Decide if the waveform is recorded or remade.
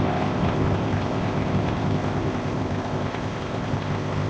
remade